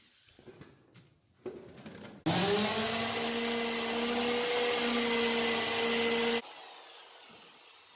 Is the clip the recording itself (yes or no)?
yes